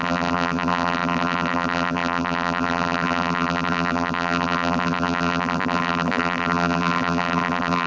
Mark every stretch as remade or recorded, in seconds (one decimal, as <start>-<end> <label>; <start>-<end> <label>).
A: 0.0-7.9 remade

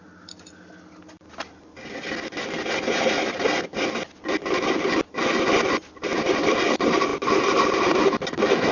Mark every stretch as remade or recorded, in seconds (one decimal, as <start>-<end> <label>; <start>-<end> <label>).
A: 0.0-6.1 recorded; 6.1-6.6 remade; 6.6-8.7 recorded

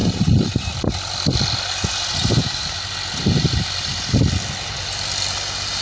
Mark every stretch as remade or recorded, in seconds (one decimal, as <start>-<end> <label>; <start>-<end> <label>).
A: 0.0-0.7 remade; 0.7-2.4 recorded; 2.4-2.9 remade; 2.9-5.8 recorded

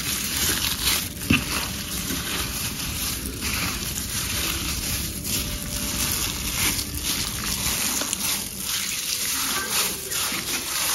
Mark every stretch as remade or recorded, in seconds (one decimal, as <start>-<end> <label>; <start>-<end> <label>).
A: 0.0-0.5 remade; 0.5-1.7 recorded; 1.7-5.6 remade; 5.6-9.2 recorded; 9.2-10.9 remade

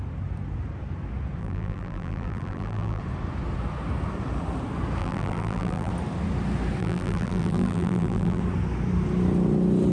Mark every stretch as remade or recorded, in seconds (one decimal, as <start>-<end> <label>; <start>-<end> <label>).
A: 0.0-1.4 recorded; 1.4-3.0 remade; 3.0-5.0 recorded; 5.0-5.9 remade; 5.9-6.8 recorded; 6.8-8.4 remade; 8.4-9.9 recorded